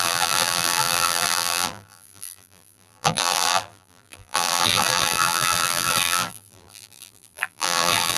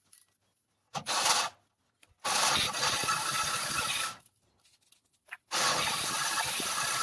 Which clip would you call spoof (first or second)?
first